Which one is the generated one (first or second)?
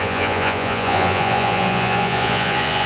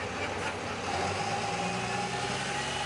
first